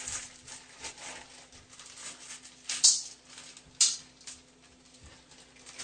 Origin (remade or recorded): recorded